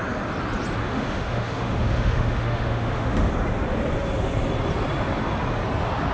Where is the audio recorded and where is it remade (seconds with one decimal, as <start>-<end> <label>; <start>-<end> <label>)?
0.0-0.8 recorded; 0.8-3.3 remade; 3.3-6.1 recorded